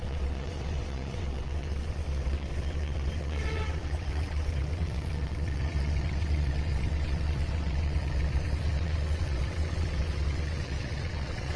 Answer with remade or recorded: remade